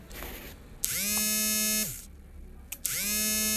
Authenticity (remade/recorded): recorded